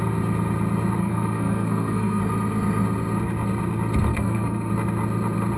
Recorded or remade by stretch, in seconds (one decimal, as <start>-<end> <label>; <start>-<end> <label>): 0.0-1.0 recorded; 1.0-2.2 remade; 2.2-4.1 recorded; 4.1-4.7 remade; 4.7-5.6 recorded